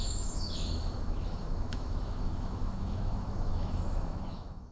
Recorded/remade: remade